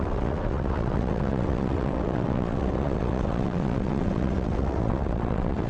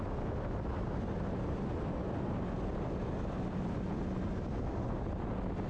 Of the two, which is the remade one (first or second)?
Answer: first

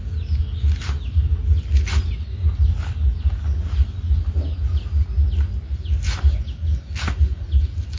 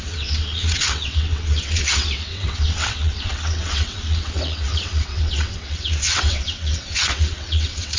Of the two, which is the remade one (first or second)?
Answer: second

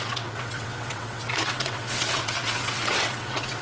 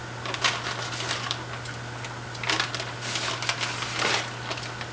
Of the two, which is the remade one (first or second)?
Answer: first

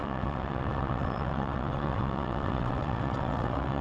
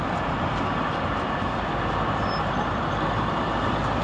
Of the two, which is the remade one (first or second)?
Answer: first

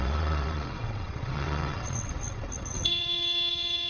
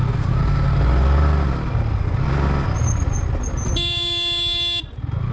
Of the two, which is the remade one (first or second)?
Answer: first